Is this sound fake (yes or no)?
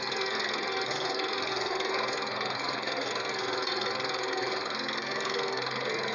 yes